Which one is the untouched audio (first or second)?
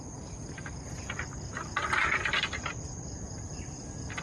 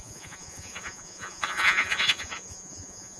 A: first